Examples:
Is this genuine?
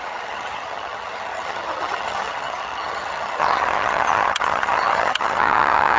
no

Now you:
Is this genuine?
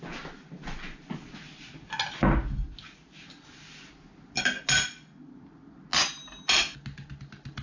yes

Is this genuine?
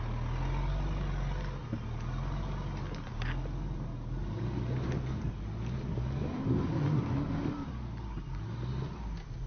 yes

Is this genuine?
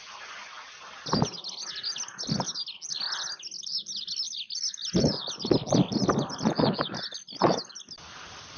yes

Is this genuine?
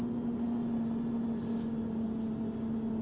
yes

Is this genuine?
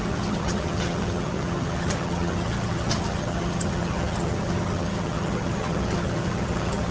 no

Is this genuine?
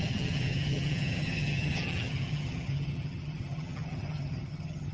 no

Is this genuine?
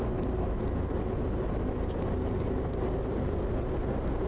yes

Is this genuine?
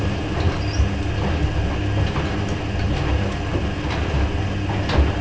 yes